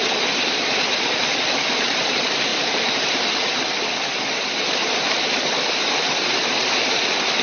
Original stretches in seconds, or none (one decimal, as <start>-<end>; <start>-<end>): 0.0-7.4